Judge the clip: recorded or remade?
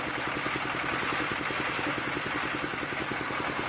recorded